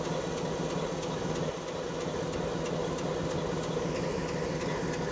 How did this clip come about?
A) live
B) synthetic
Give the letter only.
A